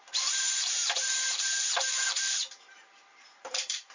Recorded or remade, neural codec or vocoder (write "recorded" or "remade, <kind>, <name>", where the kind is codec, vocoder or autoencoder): remade, vocoder, BigVGAN v2